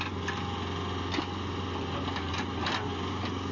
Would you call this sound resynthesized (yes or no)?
no